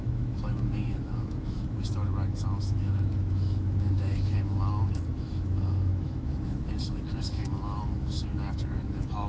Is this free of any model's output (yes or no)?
no